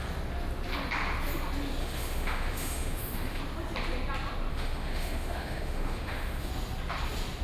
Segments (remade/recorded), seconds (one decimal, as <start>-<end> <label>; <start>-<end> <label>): 0.0-1.8 recorded; 1.8-3.4 remade; 3.4-4.5 recorded; 4.5-6.5 remade; 6.5-7.4 recorded